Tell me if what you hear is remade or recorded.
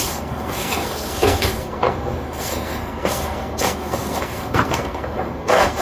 remade